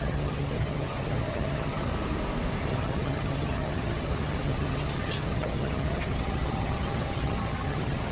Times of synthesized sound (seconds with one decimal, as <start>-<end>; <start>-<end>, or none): 0.0-1.9; 2.6-8.1